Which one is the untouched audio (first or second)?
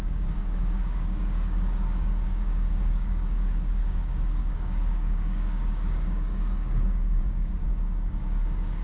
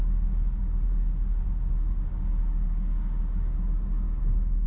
second